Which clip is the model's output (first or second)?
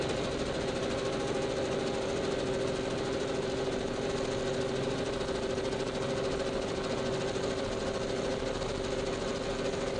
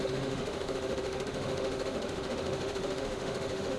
second